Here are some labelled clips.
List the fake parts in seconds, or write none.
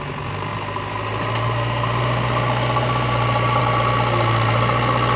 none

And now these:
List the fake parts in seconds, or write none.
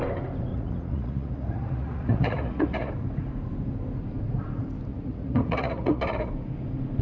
0.5-2.9 (vocoder, Vocos); 4.9-6.3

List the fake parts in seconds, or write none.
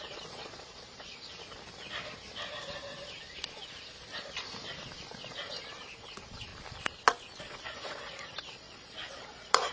0.0-1.3 (vocoder, Vocos); 5.5-6.5; 7.4-9.7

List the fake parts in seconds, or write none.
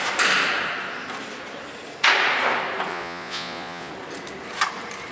2.9-3.9 (vocoder, Vocos)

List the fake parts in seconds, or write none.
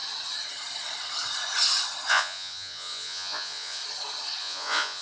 2.1-3.8 (vocoder, Vocos); 4.4-5.0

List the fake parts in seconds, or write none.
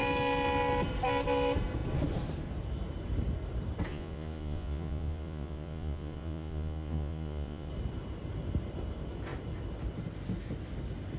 3.9-7.7 (vocoder, Vocos)